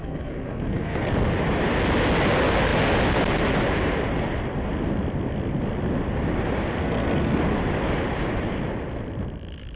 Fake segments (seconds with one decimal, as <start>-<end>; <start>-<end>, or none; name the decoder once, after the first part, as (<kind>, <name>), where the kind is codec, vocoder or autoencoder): 0.0-1.1 (codec, SNAC); 6.8-7.4